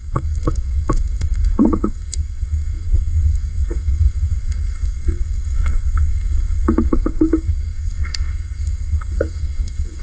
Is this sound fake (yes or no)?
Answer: yes